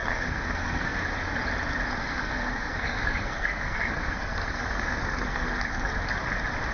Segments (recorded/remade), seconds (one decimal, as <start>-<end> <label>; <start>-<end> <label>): 0.0-1.0 remade; 1.0-2.0 recorded; 2.0-5.9 remade; 5.9-6.7 recorded